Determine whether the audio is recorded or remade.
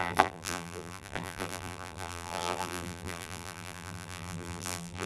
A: remade